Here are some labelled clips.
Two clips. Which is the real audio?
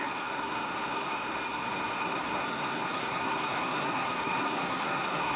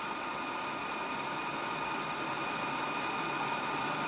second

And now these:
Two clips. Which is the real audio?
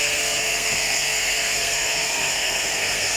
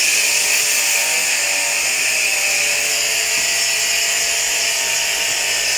second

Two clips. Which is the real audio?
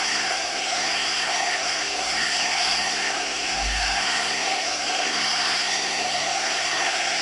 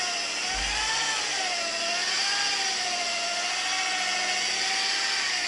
second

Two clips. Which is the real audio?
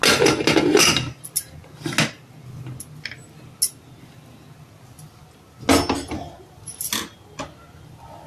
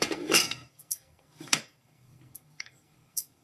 first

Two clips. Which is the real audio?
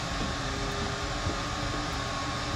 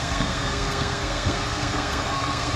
first